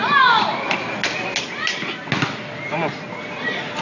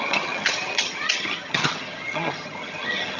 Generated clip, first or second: second